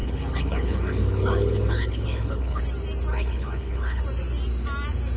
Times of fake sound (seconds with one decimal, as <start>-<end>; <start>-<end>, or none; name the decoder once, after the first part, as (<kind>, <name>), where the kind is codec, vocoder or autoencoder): 0.0-2.6 (codec, HILCodec); 3.1-4.0